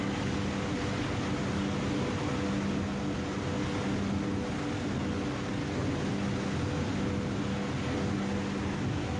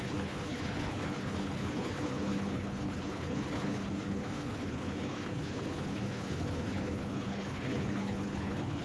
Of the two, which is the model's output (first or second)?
second